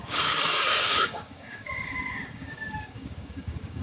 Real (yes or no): no